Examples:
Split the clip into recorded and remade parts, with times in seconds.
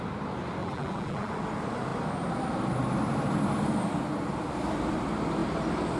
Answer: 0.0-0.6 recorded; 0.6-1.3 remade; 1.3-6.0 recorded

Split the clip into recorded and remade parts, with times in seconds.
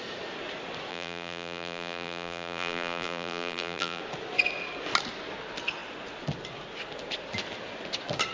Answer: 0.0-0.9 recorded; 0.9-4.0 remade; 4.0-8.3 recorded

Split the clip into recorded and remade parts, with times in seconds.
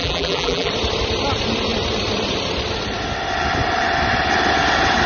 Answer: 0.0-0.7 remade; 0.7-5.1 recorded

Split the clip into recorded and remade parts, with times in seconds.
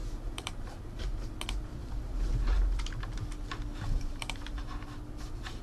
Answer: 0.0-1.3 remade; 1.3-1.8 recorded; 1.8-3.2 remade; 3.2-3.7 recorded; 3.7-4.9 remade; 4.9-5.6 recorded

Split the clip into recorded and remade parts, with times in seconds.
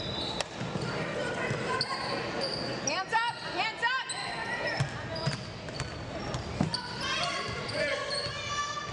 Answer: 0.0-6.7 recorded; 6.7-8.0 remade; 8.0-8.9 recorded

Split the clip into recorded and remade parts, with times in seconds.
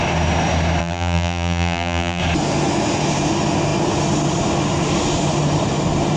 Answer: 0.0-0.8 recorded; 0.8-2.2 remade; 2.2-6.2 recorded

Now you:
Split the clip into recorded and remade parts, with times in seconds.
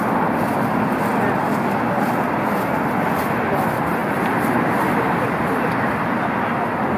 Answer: 0.0-7.0 recorded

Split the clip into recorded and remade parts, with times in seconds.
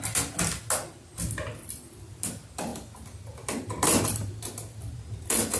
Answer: 0.0-5.6 recorded